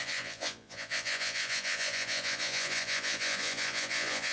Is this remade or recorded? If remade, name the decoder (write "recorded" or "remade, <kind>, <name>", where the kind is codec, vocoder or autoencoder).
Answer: remade, vocoder, Vocos